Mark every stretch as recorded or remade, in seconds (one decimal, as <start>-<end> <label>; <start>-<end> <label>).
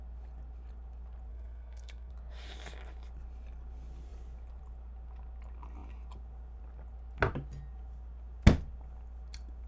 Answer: 0.0-1.3 recorded; 1.3-2.1 remade; 2.1-9.7 recorded